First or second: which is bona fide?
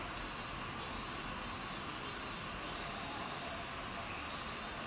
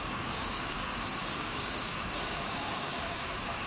first